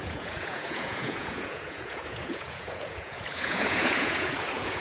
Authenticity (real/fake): fake